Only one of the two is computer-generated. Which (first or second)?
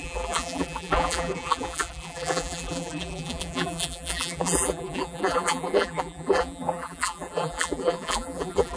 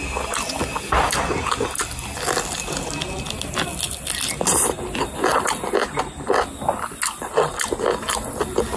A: first